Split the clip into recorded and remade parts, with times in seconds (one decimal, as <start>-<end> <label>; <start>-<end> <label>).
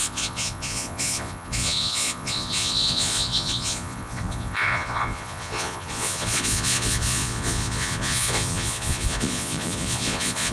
0.0-10.5 remade